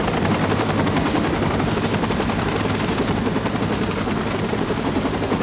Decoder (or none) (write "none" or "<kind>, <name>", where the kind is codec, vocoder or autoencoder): vocoder, BigVGAN v2